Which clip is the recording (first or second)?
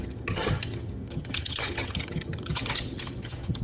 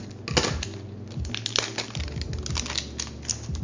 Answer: second